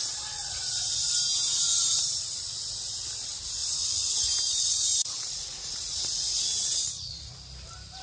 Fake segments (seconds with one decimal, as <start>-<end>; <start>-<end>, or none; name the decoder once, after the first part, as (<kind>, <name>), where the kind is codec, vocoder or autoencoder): 0.4-1.1 (vocoder, Vocos); 3.6-7.3